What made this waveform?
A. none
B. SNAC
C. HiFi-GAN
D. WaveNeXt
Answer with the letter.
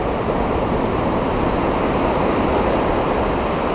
A